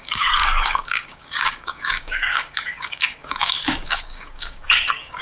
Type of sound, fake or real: fake